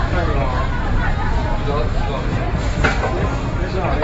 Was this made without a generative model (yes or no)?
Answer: yes